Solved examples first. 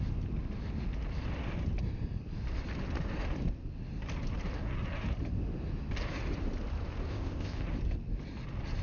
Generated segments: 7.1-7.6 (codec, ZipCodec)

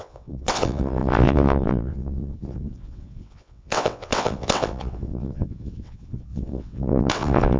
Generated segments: 0.0-7.6 (vocoder, WaveNeXt)

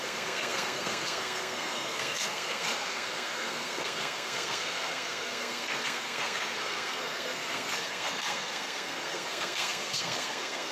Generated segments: 0.0-10.7 (codec, SNAC)

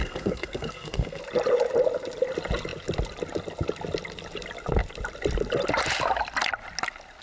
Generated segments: 0.0-1.2 (codec, SNAC)

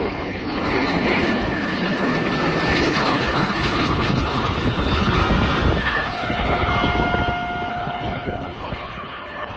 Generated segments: 0.0-2.1 (codec, HILCodec); 2.8-5.2; 5.8-6.7; 7.7-9.6